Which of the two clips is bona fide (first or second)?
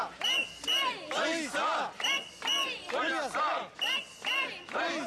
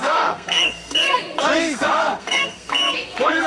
first